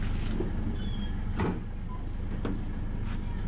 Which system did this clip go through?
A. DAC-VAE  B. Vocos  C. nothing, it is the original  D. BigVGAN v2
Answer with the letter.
C